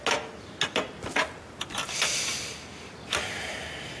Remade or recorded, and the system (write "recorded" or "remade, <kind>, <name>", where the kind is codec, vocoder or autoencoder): recorded